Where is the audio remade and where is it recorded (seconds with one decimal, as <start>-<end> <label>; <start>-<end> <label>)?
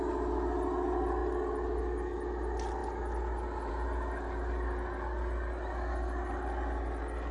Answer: 0.0-7.3 recorded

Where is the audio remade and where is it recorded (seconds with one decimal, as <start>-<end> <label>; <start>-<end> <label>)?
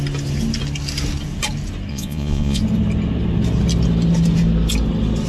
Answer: 0.0-1.9 recorded; 1.9-2.6 remade; 2.6-5.3 recorded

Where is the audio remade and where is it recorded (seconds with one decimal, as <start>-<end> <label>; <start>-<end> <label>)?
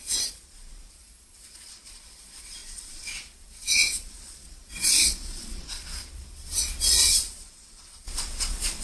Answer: 0.0-8.8 remade